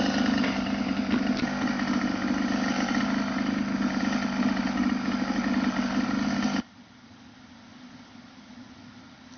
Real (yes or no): yes